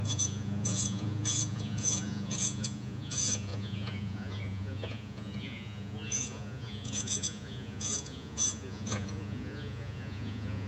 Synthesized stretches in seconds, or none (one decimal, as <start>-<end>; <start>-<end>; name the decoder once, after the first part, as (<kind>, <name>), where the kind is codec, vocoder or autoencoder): 0.0-10.7 (vocoder, Vocos)